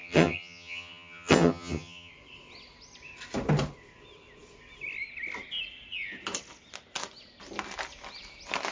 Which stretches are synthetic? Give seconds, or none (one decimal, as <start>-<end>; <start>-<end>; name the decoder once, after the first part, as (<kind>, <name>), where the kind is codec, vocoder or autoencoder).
0.0-2.1 (vocoder, HiFi-GAN)